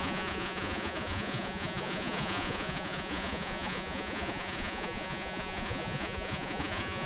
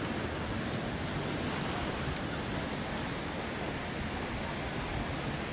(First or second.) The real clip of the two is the second